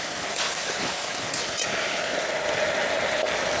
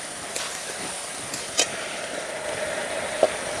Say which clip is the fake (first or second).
second